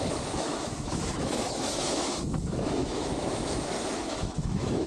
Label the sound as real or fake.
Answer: fake